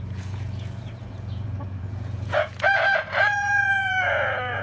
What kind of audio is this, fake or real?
fake